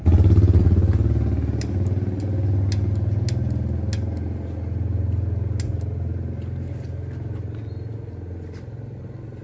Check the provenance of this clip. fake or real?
real